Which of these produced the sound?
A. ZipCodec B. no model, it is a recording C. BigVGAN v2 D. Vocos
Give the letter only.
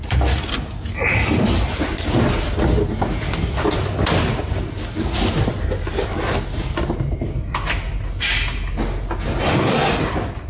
B